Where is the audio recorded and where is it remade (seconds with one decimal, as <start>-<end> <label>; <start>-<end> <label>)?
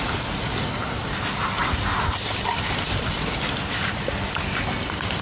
0.0-5.2 recorded